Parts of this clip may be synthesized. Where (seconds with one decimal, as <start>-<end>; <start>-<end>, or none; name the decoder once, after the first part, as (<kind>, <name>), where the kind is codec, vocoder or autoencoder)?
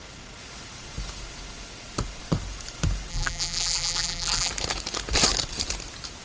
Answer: 3.1-4.5 (vocoder, BigVGAN v2)